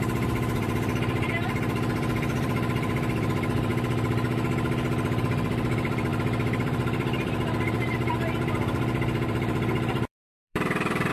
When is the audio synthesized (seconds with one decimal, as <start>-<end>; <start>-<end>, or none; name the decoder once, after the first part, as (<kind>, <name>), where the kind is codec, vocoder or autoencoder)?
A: 0.0-3.7 (vocoder, BigVGAN v2); 5.2-11.1